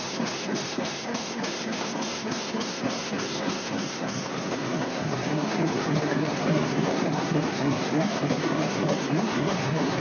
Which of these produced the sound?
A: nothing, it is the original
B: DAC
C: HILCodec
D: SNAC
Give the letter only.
D